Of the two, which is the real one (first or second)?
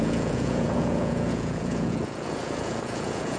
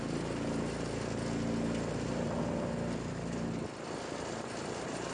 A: second